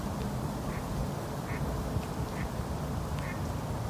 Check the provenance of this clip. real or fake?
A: real